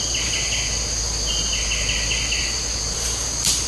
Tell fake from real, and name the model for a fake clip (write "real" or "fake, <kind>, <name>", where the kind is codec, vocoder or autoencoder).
real